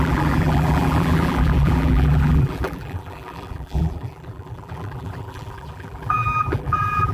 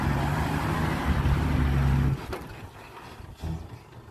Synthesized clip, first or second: first